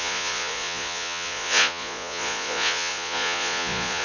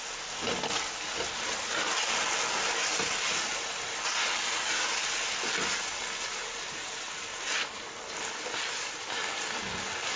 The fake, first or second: first